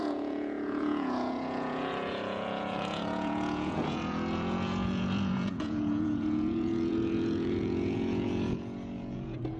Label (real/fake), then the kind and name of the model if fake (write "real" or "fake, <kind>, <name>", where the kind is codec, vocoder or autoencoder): fake, vocoder, Vocos